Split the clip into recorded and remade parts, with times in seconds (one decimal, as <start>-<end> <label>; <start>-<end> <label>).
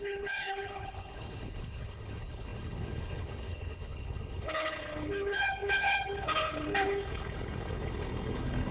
0.0-8.7 remade